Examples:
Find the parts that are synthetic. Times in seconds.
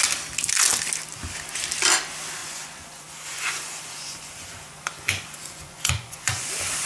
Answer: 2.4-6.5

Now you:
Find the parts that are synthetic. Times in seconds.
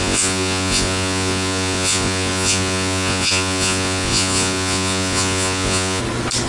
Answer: 0.0-6.0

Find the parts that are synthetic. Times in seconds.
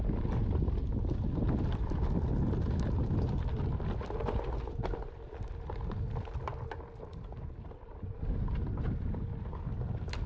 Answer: none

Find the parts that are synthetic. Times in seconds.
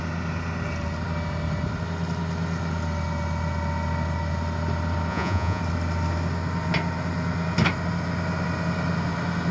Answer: 5.1-5.6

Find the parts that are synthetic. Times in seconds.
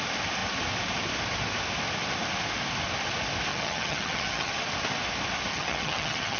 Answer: 3.5-4.5; 5.5-6.4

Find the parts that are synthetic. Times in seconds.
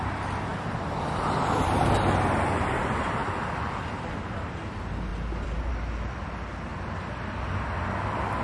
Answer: 3.2-4.1; 5.1-5.7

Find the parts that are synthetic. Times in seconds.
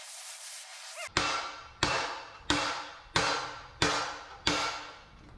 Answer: none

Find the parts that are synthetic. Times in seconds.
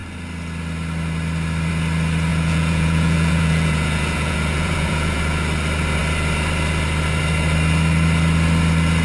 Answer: 2.3-5.2